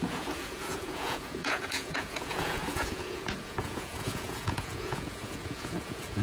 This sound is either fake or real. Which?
fake